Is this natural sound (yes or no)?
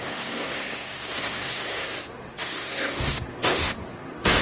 no